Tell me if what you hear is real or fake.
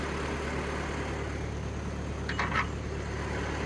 real